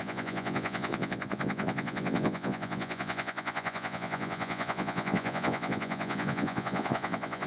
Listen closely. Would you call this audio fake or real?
fake